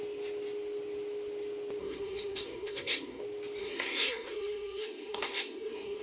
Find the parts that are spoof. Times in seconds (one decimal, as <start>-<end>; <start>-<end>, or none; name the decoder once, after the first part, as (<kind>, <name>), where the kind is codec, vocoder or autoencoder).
1.8-3.2 (codec, SNAC); 3.6-6.0